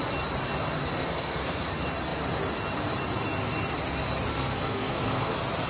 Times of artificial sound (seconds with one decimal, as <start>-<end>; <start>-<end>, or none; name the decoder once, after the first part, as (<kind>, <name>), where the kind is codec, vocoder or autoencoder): 0.9-1.7 (codec, SNAC); 4.3-5.3